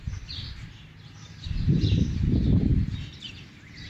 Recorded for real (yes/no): no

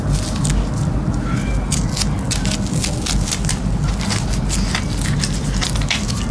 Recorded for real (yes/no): yes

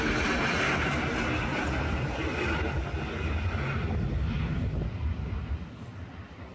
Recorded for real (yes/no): yes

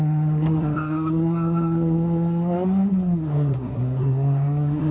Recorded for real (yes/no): no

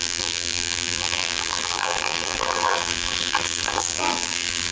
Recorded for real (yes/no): no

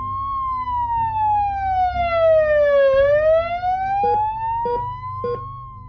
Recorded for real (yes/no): yes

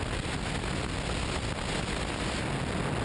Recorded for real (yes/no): yes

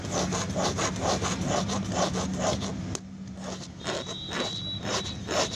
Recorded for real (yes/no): yes